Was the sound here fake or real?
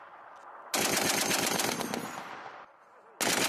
real